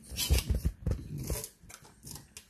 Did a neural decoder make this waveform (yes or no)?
no